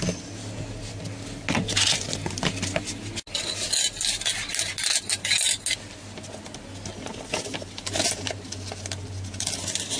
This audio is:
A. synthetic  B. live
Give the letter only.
B